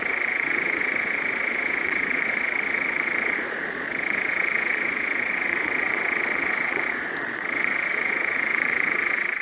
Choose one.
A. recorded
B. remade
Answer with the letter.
B